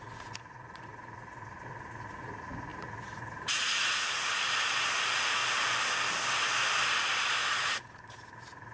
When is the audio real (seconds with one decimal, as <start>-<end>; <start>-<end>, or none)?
5.4-7.5